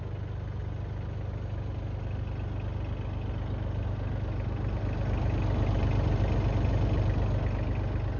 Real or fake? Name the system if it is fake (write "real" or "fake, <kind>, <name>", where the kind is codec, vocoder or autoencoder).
real